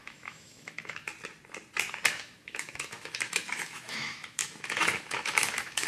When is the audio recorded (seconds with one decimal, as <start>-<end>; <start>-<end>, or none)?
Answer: 1.1-2.1

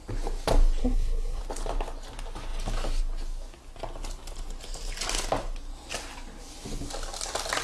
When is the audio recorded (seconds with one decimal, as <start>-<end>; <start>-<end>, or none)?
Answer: 0.0-0.8; 1.4-7.6